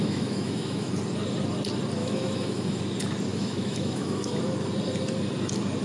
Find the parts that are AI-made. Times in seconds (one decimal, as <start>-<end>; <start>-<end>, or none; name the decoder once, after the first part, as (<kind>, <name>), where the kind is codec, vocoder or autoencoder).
0.0-0.9 (autoencoder, DAC-VAE); 2.0-2.8; 3.3-4.4